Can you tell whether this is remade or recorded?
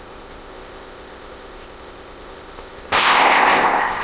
remade